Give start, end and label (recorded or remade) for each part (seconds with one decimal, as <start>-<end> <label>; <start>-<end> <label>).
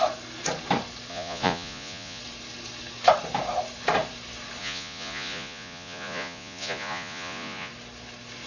0.0-1.1 recorded; 1.1-2.2 remade; 2.2-4.6 recorded; 4.6-7.7 remade; 7.7-8.5 recorded